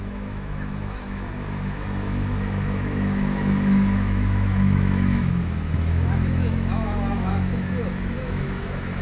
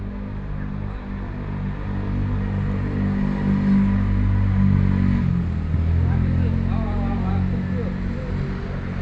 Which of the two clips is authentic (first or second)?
second